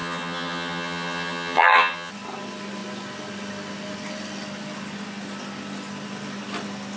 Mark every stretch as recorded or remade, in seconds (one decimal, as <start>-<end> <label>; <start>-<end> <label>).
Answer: 0.0-2.1 remade; 2.1-7.0 recorded